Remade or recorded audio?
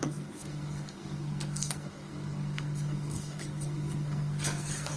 remade